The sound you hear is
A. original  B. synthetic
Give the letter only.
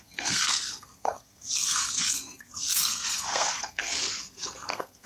B